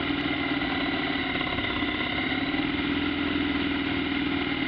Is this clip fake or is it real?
real